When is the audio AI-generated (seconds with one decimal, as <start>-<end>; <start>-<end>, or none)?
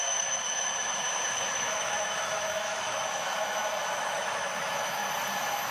0.0-3.6; 4.2-5.0